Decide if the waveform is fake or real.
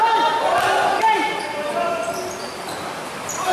real